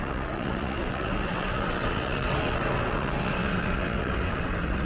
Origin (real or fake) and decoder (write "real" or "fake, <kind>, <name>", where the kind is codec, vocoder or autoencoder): fake, vocoder, WaveNeXt